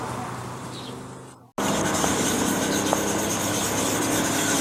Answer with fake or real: real